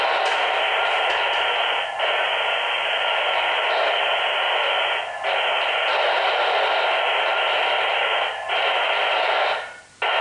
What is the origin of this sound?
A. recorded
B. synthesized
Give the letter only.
A